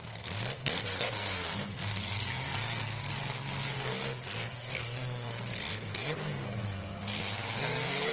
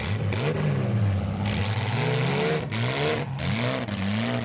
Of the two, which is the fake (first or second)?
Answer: first